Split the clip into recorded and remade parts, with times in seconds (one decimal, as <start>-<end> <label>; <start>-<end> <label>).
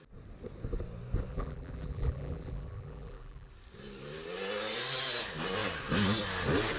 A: 0.0-1.3 recorded; 1.3-3.5 remade; 3.5-6.8 recorded